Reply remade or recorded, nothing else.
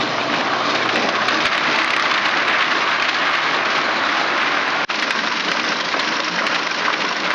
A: recorded